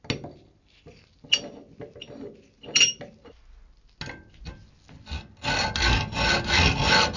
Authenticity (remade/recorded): recorded